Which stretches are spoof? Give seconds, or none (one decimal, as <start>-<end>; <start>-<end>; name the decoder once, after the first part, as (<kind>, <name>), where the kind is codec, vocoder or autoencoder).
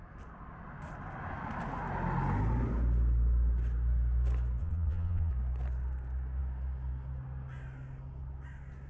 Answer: 4.6-5.3 (vocoder, Vocos)